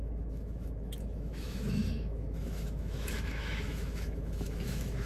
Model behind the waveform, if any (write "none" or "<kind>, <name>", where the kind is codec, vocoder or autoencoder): autoencoder, DAC-VAE